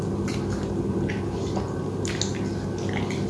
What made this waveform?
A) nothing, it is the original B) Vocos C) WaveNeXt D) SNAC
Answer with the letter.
A